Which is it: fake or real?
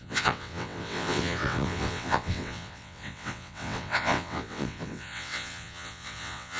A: fake